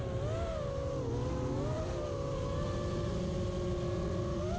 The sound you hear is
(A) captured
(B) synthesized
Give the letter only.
A